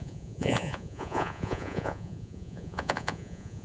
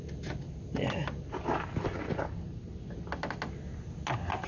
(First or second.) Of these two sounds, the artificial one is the first